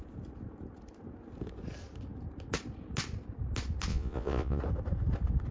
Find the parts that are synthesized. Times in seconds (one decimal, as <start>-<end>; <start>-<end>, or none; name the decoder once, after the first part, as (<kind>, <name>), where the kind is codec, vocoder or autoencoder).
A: 3.9-4.6 (vocoder, Vocos)